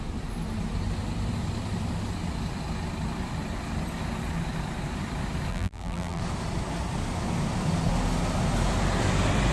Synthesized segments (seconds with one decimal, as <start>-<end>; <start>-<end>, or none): 5.5-6.2